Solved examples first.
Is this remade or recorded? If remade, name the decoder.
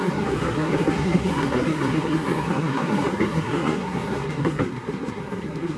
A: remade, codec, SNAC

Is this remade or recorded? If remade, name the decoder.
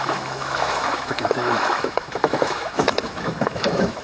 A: remade, autoencoder, DAC-VAE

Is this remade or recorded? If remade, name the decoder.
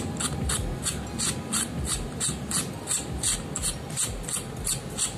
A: recorded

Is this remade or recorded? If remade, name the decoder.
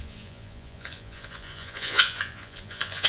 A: remade, vocoder, Vocos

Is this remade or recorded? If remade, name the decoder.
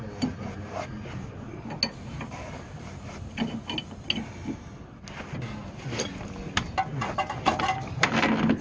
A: recorded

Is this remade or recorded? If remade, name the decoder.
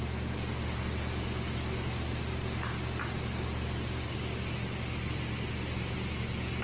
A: recorded